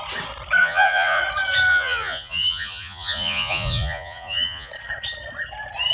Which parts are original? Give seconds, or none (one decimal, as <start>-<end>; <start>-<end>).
0.0-0.6; 1.2-1.7; 4.7-5.9